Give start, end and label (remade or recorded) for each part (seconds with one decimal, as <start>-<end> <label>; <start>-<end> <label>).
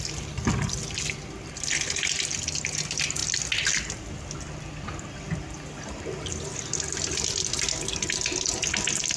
0.0-9.2 recorded